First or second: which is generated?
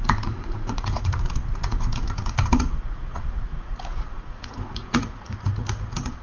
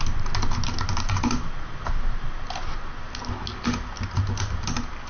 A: first